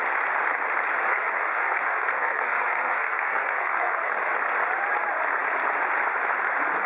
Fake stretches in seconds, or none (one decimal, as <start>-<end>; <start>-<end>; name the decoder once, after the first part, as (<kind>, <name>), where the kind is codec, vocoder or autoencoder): 1.1-4.1 (codec, SNAC)

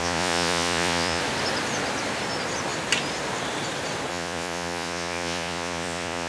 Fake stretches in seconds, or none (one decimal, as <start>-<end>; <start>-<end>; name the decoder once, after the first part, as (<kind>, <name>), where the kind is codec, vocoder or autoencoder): 0.0-1.2 (vocoder, Vocos); 4.1-6.3

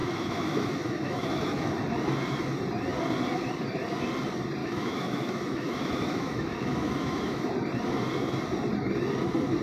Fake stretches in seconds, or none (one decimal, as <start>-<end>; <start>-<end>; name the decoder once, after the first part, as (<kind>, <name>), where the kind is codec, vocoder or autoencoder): 0.0-1.7 (autoencoder, DAC-VAE); 4.6-7.5

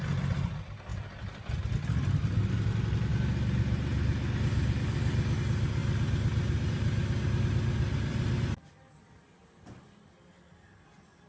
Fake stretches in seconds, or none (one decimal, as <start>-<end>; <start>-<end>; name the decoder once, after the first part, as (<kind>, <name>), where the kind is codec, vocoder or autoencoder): none